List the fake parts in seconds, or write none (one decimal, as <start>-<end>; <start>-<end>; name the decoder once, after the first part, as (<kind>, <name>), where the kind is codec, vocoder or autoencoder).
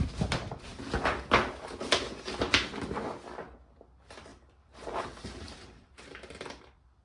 4.3-6.6 (vocoder, BigVGAN v2)